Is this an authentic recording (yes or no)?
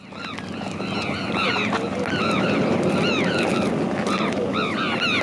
yes